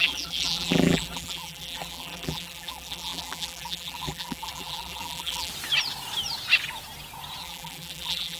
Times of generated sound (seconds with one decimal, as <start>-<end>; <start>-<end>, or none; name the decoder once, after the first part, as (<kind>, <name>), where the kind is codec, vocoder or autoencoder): 0.0-5.5 (vocoder, BigVGAN v2); 7.4-8.4